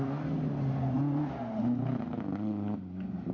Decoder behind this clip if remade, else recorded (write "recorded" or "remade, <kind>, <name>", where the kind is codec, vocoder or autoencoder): recorded